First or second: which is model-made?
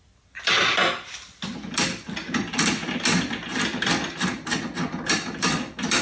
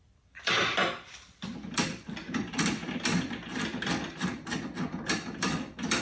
second